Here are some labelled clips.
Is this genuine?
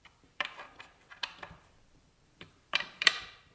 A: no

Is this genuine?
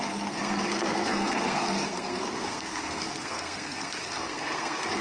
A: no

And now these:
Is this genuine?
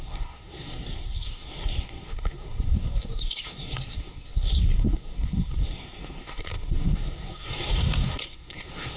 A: no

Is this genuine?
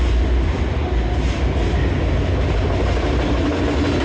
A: yes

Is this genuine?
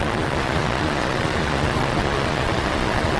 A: no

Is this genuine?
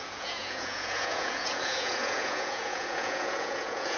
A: no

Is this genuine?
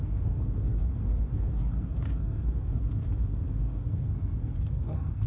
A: no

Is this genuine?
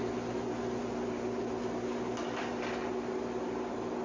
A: yes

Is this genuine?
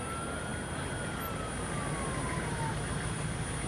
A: yes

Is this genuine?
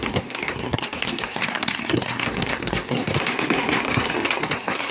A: no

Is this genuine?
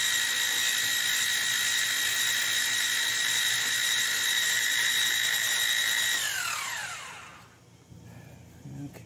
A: yes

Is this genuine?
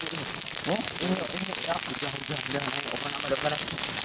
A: yes